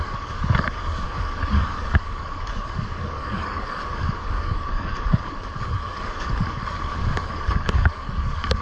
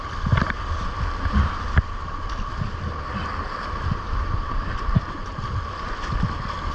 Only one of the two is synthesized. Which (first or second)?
first